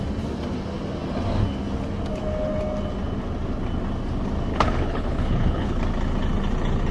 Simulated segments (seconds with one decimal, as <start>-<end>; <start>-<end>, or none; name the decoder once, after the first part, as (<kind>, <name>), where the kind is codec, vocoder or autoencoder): 4.5-5.8 (codec, HILCodec)

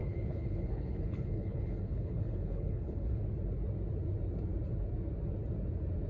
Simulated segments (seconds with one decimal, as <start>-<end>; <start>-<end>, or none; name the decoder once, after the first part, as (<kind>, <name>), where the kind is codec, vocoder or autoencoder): 0.0-3.2 (codec, HILCodec)

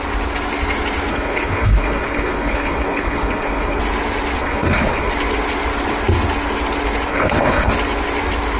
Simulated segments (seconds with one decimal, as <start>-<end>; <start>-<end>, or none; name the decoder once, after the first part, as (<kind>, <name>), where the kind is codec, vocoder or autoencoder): 1.1-3.8 (codec, HILCodec); 4.4-5.1; 7.1-7.7

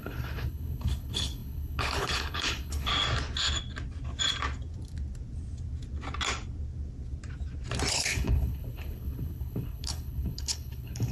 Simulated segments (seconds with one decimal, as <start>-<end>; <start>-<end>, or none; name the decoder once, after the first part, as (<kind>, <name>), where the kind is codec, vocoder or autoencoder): 0.0-2.9 (codec, HILCodec); 7.9-11.1